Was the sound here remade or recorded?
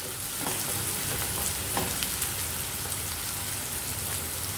recorded